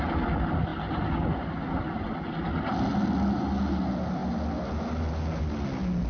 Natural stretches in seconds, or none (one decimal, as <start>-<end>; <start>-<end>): 0.0-6.1